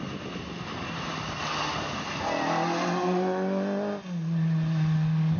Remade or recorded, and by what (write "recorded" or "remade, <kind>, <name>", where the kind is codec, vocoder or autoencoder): recorded